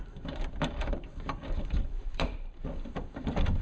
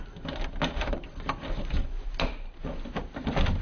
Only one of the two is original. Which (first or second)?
second